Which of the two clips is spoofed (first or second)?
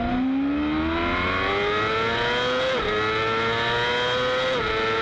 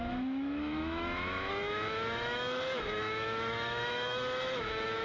second